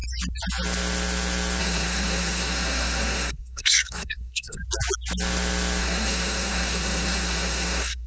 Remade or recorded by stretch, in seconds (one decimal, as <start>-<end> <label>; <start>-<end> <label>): 0.0-1.6 recorded; 1.6-4.6 remade; 4.6-5.8 recorded; 5.8-8.1 remade